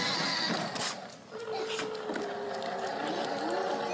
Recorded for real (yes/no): yes